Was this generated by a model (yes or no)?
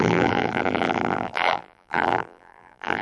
yes